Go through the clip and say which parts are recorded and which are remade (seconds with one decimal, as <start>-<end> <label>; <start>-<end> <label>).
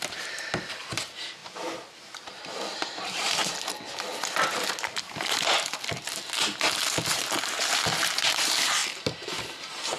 0.0-3.4 remade; 3.4-7.1 recorded; 7.1-10.0 remade